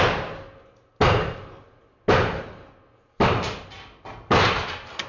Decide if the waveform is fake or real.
real